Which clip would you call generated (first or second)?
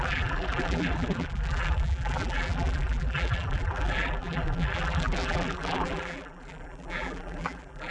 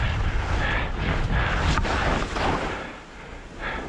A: first